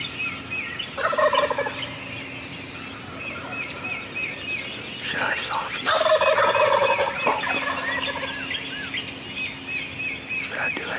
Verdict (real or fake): real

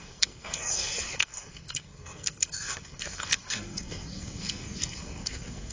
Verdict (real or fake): fake